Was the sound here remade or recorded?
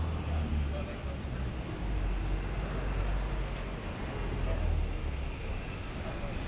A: recorded